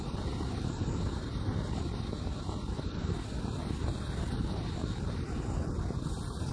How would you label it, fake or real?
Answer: real